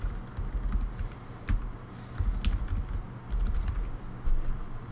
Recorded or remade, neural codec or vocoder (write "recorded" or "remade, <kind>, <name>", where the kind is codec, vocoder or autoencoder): recorded